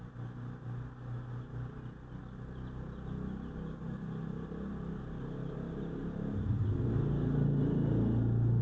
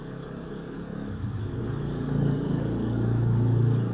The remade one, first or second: second